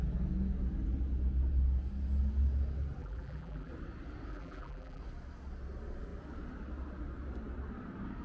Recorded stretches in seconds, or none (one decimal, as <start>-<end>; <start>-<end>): 0.0-3.0; 3.7-4.3; 5.0-8.2